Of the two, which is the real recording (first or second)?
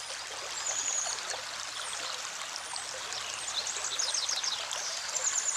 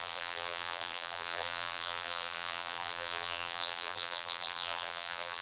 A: first